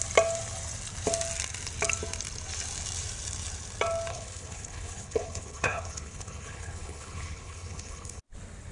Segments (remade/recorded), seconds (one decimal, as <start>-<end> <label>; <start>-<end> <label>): 0.0-4.1 recorded; 4.1-8.2 remade; 8.2-8.7 recorded